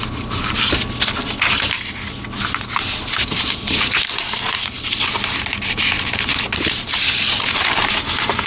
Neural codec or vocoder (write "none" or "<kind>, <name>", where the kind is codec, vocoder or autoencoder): none